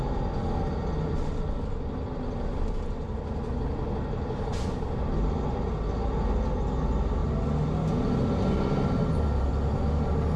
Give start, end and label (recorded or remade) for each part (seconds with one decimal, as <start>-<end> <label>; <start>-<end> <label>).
0.0-10.4 recorded